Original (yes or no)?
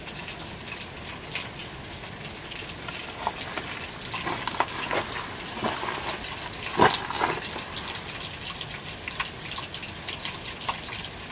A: yes